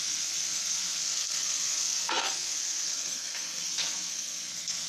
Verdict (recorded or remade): remade